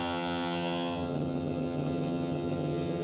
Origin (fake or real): fake